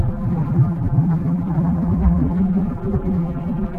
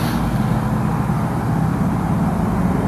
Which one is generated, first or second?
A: first